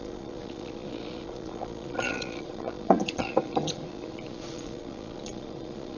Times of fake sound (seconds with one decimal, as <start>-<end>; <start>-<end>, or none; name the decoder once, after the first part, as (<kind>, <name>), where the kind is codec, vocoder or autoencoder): 0.0-6.0 (vocoder, Vocos)